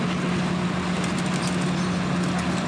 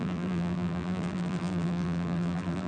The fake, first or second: second